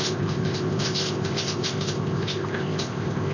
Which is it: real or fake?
fake